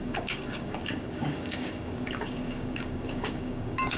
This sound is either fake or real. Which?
fake